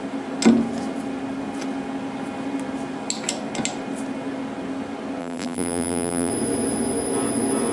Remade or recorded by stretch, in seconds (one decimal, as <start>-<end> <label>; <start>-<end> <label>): 0.0-5.2 recorded; 5.2-6.3 remade; 6.3-7.7 recorded